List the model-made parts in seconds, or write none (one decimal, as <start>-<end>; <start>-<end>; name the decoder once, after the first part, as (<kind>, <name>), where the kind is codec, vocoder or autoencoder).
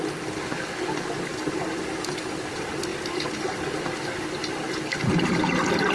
none